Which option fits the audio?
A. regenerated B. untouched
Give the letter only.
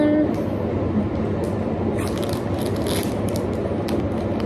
B